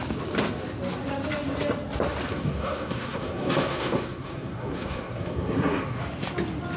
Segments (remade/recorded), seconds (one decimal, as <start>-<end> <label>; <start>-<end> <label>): 0.0-2.3 recorded; 2.3-6.0 remade; 6.0-6.8 recorded